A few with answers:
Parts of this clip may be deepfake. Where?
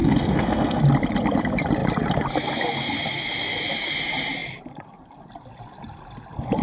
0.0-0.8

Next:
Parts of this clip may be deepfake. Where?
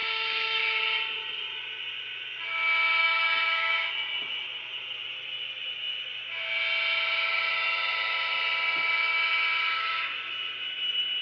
0.0-0.6; 3.0-3.9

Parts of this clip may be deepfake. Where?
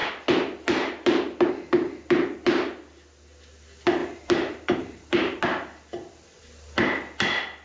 4.0-5.4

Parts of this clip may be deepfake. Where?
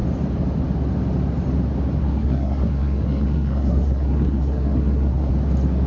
2.0-5.3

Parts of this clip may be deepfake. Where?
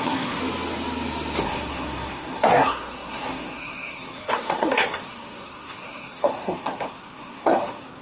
0.0-0.4; 1.4-8.0